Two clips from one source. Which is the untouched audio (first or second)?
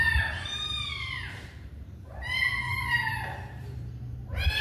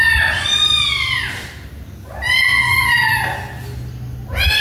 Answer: second